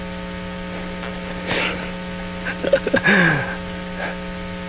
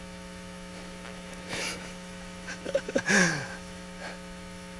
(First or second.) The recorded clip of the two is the first